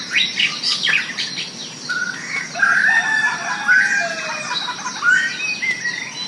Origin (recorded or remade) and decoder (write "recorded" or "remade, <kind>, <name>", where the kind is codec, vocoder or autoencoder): recorded